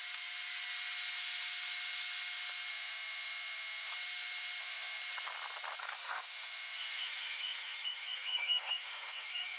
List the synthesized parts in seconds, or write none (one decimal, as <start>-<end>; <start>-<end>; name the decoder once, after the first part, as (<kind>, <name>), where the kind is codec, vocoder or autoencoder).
2.7-3.9 (autoencoder, DAC-VAE); 4.6-5.0; 5.8-9.6